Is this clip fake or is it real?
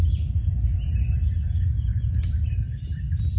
real